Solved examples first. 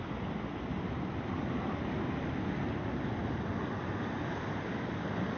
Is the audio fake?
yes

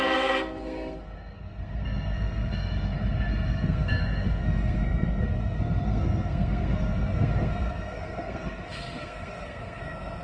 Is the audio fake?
yes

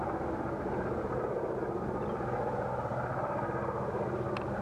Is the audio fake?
no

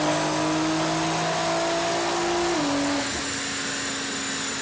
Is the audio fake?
no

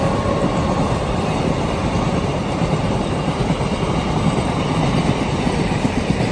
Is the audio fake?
no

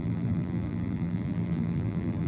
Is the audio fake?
yes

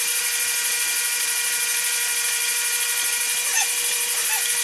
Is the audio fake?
yes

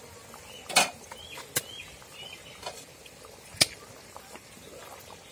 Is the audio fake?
no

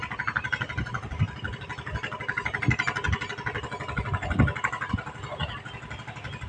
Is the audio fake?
no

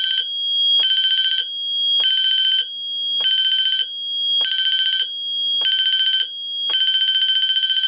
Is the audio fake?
no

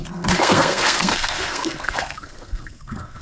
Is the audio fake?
yes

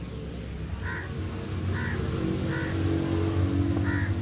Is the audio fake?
no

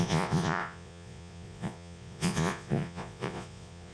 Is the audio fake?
yes